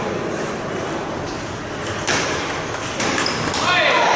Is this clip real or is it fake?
real